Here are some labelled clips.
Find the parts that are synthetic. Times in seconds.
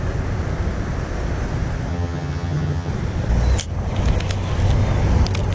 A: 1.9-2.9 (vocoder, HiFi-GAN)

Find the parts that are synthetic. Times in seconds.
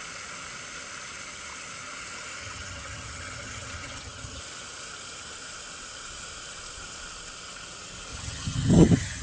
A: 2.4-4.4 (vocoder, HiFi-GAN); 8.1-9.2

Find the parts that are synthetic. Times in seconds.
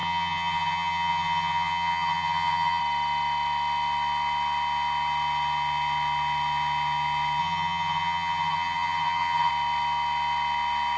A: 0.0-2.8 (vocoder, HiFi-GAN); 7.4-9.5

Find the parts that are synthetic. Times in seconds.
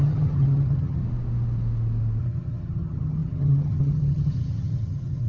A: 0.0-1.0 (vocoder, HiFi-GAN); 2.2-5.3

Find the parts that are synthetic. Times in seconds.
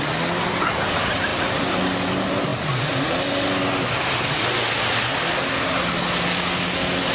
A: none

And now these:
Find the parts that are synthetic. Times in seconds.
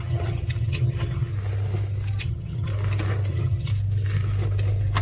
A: 0.0-1.3 (vocoder, HiFi-GAN); 2.2-2.7; 3.3-3.7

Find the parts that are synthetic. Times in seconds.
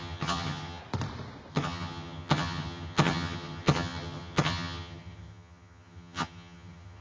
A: 0.0-0.8 (vocoder, HiFi-GAN); 1.5-7.0